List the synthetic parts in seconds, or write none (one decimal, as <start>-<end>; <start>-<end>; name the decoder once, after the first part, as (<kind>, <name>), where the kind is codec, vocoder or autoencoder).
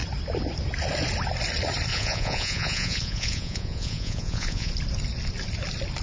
1.9-4.7 (vocoder, Vocos)